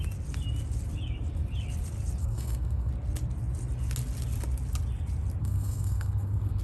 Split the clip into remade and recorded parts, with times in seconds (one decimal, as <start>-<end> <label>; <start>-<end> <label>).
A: 0.0-2.2 recorded; 2.2-2.9 remade; 2.9-5.4 recorded; 5.4-6.6 remade